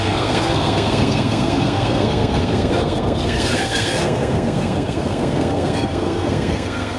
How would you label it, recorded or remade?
remade